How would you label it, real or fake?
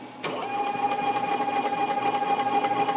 real